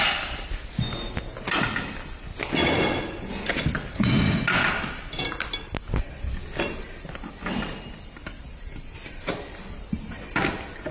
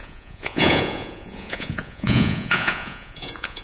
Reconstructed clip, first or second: second